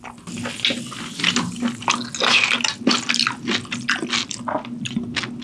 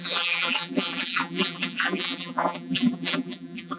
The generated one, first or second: second